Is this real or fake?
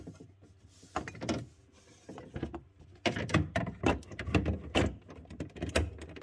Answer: real